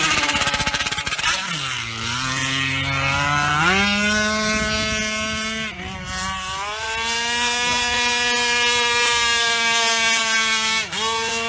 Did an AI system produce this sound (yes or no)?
no